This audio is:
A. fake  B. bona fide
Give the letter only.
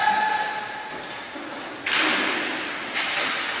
B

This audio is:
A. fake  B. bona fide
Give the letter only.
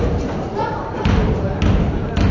B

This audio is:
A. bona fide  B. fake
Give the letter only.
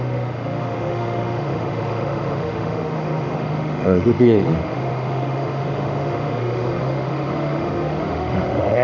B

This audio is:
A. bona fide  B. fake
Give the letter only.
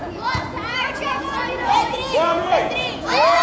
B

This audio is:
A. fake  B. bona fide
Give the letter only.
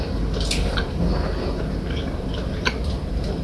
B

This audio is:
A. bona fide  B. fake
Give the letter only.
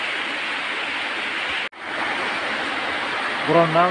A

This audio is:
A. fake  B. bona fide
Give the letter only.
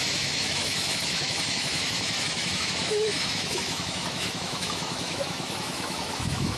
A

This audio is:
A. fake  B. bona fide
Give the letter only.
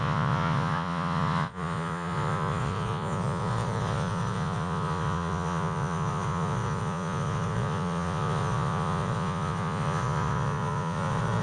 A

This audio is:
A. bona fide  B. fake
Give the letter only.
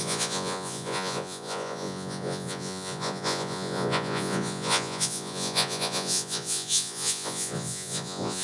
B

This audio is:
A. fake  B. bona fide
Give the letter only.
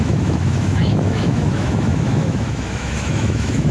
A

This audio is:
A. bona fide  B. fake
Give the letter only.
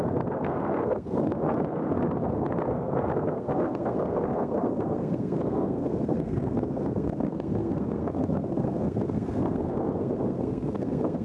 B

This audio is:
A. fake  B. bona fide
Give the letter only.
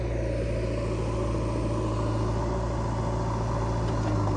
B